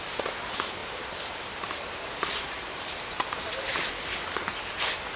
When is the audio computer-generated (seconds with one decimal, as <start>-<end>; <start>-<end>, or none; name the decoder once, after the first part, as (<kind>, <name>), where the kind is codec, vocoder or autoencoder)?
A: 0.8-3.9 (vocoder, BigVGAN v2)